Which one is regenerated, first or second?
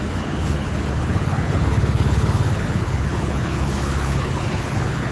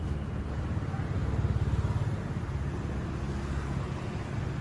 first